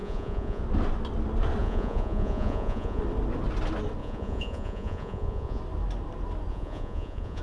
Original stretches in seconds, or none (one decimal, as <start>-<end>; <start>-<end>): 0.6-1.6; 3.0-4.0; 5.6-6.5